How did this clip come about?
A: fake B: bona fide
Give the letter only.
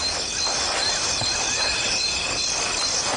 B